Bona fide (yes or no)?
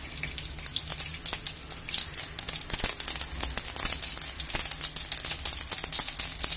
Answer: yes